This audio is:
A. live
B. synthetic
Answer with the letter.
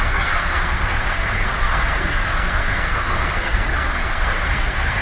B